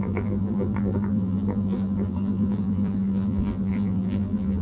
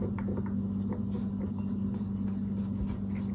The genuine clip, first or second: second